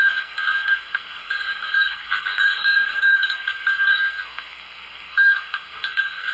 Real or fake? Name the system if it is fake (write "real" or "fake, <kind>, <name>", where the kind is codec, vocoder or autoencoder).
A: fake, codec, SNAC